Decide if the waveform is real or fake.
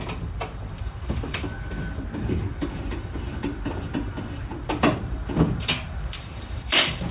fake